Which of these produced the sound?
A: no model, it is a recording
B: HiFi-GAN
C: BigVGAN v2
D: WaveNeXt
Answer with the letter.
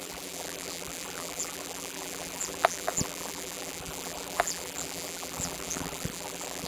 C